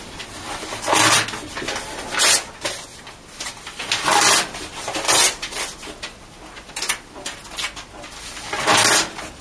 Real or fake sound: real